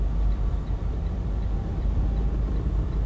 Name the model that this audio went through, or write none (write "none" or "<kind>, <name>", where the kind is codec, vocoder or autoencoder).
vocoder, BigVGAN v2